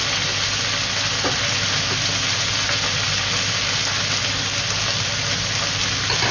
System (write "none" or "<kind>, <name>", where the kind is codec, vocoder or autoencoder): none